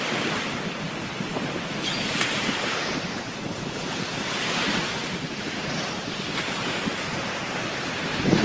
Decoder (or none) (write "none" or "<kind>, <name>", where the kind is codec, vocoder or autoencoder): vocoder, BigVGAN v2